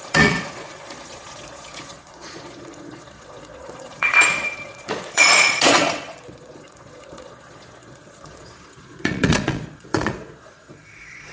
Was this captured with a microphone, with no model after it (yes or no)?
no